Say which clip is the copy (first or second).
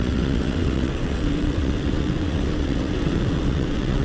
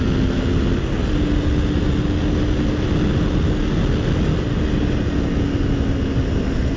first